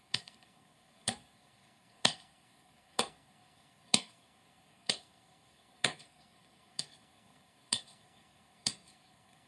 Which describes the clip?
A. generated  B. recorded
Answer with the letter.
A